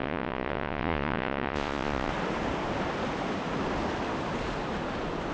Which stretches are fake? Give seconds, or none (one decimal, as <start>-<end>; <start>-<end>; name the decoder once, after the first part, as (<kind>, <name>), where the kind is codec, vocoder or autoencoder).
0.0-2.1 (vocoder, Vocos)